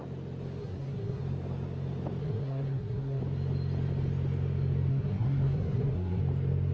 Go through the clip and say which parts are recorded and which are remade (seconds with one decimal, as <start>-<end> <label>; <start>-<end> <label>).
0.0-0.6 recorded; 0.6-1.2 remade; 1.2-2.2 recorded; 2.2-3.2 remade; 3.2-4.9 recorded; 4.9-6.2 remade; 6.2-6.7 recorded